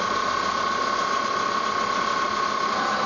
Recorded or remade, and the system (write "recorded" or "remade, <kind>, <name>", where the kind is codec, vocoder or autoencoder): recorded